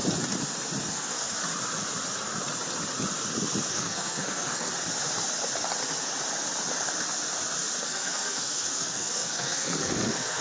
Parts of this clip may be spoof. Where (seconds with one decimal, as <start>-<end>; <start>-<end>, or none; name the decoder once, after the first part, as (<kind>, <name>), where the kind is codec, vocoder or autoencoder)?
0.9-1.4 (codec, SNAC); 3.7-4.7; 7.8-10.4